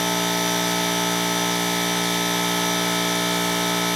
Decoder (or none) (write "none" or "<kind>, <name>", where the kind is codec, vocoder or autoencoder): none